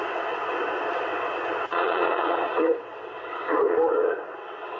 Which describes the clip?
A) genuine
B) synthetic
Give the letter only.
B